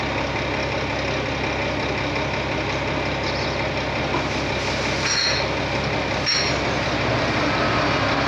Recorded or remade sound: recorded